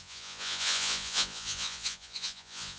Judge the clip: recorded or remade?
remade